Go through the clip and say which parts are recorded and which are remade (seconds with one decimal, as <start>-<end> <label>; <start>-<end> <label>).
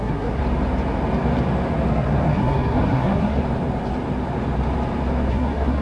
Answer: 0.0-0.4 remade; 0.4-1.9 recorded; 1.9-3.4 remade; 3.4-5.3 recorded; 5.3-5.8 remade